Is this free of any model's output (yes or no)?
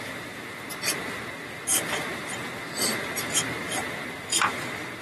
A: no